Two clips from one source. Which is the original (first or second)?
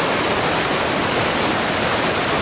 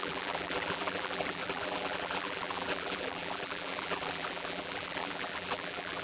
first